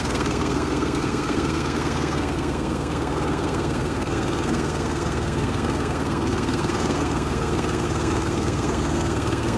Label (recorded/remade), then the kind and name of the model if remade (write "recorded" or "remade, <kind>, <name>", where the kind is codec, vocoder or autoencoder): remade, codec, SNAC